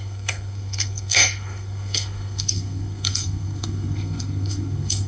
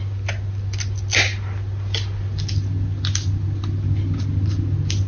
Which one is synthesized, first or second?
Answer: first